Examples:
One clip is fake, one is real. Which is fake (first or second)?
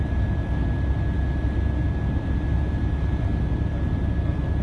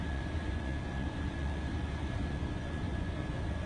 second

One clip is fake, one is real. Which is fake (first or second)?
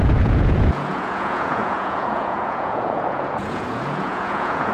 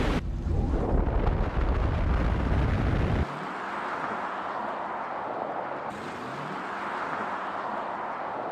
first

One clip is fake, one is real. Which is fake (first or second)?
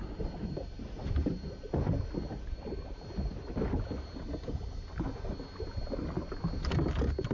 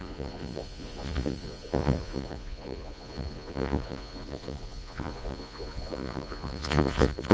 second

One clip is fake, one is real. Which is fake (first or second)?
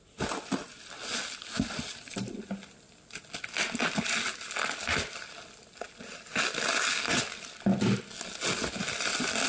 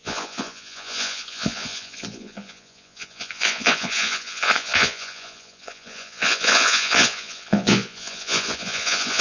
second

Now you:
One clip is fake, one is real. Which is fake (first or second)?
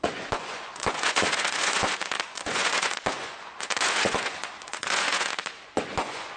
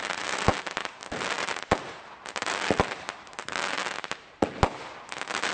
first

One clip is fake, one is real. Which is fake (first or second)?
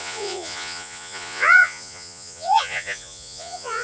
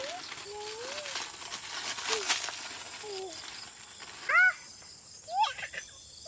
first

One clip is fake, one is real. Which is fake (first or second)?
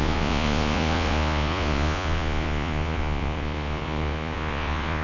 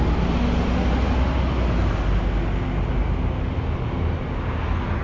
first